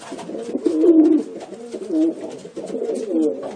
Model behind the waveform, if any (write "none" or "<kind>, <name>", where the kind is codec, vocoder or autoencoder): none